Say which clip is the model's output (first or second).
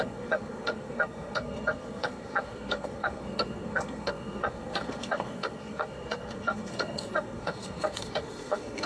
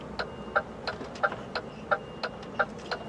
first